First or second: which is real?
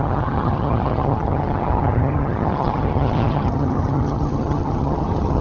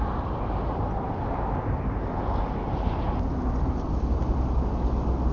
second